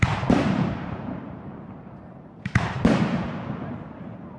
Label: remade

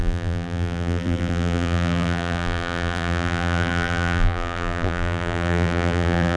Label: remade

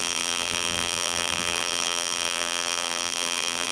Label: remade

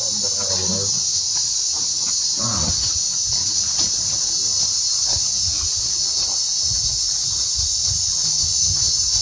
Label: recorded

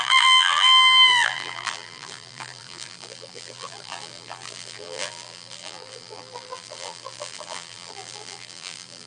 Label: remade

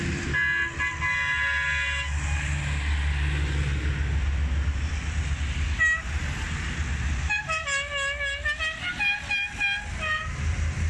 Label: recorded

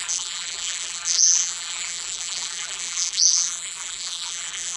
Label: remade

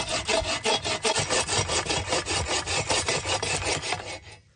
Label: recorded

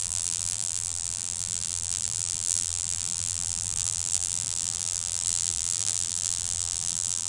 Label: remade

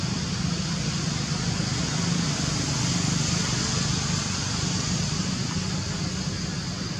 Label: recorded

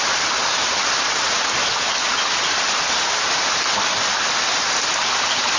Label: recorded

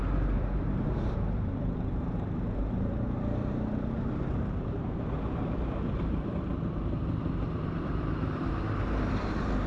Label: remade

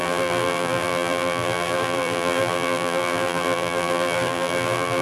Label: remade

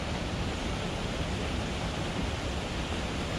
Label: recorded